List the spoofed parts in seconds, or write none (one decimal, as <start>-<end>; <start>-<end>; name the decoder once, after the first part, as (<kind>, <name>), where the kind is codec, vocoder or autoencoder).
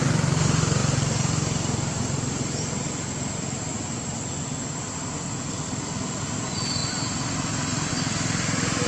none